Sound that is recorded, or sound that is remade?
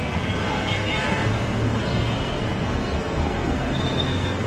remade